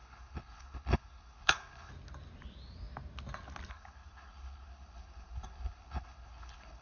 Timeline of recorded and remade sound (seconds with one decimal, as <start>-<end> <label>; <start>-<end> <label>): 0.0-1.9 remade; 1.9-3.7 recorded; 3.7-6.8 remade